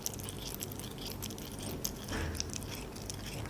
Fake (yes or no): no